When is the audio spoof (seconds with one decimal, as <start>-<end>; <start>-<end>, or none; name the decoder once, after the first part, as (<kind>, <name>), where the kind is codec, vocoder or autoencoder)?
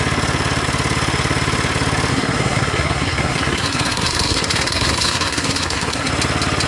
2.1-6.1 (codec, SNAC)